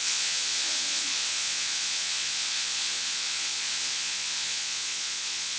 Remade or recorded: remade